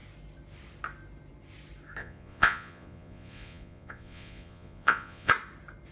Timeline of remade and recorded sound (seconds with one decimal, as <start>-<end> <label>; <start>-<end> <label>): 0.0-2.0 recorded; 2.0-5.3 remade; 5.3-5.9 recorded